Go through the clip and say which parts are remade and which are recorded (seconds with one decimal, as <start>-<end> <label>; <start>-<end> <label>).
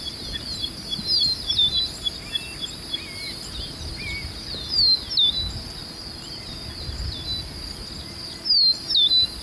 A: 0.0-5.8 recorded; 5.8-6.4 remade; 6.4-9.4 recorded